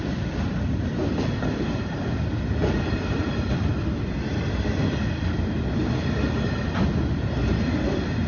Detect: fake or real real